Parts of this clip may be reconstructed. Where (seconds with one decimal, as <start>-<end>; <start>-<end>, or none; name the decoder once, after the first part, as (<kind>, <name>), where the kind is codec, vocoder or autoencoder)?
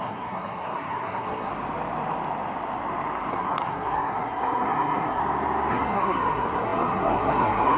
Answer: 0.0-1.5 (codec, SNAC); 3.3-5.2; 5.7-7.8